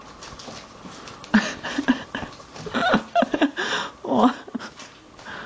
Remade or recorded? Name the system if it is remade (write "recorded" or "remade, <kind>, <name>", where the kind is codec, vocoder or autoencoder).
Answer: recorded